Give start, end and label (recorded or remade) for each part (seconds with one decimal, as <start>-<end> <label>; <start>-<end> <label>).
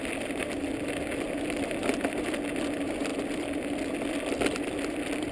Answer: 0.0-5.3 recorded